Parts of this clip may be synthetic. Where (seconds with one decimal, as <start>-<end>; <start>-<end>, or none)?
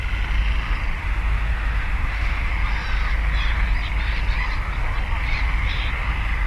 1.0-2.5